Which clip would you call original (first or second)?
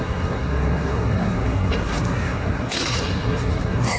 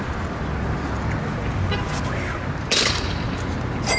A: second